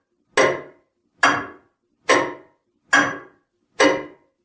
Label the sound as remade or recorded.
recorded